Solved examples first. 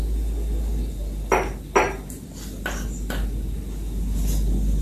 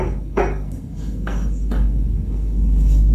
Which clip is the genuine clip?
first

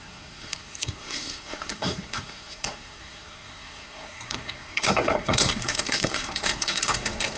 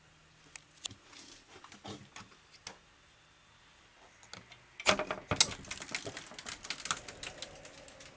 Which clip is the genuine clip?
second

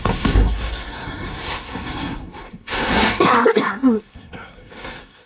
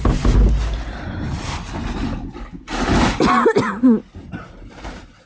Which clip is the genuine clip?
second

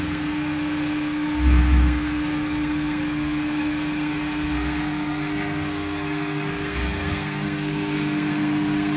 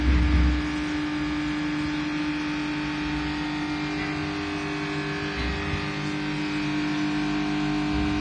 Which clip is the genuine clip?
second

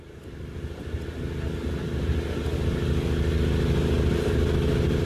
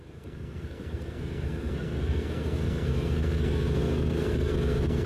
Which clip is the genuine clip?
first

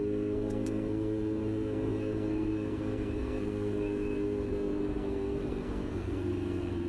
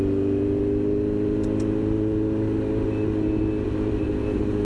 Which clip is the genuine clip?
second